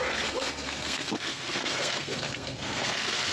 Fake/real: fake